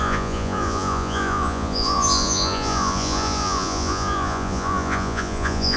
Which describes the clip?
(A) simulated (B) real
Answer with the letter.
A